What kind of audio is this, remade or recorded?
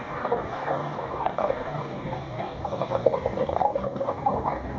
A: remade